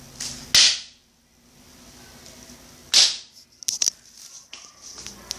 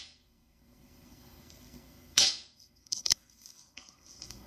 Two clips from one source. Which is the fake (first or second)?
second